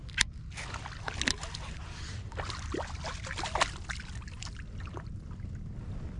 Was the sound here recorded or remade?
recorded